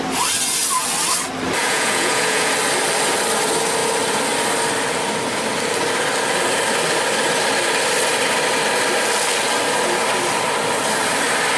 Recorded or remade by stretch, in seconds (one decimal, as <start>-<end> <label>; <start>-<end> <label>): 0.0-1.6 recorded; 1.6-2.5 remade; 2.5-11.6 recorded